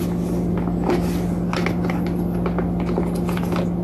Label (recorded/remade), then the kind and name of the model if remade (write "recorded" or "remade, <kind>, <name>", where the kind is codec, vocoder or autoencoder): recorded